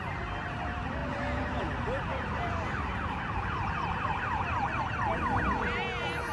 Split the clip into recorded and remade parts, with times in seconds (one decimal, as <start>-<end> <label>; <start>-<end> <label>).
0.0-1.0 recorded; 1.0-4.8 remade; 4.8-6.3 recorded